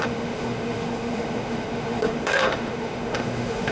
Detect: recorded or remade remade